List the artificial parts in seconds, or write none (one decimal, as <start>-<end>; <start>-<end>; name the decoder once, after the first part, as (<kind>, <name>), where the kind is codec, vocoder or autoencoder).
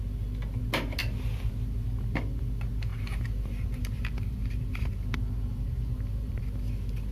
2.9-6.4 (vocoder, BigVGAN v2)